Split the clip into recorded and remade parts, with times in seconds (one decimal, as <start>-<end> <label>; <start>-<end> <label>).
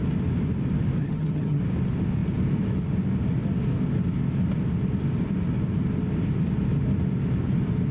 0.0-1.0 recorded; 1.0-1.6 remade; 1.6-7.9 recorded